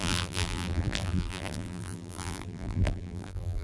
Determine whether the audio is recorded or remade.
remade